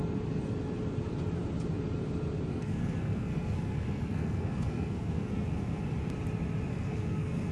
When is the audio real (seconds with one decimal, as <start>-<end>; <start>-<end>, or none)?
0.0-2.5; 5.8-6.7